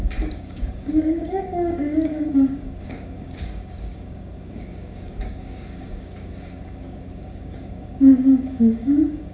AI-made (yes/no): yes